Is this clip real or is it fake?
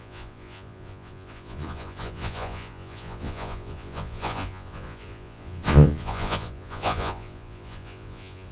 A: fake